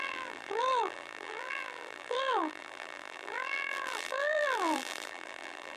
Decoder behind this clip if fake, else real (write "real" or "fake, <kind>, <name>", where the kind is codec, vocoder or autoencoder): fake, vocoder, BigVGAN v2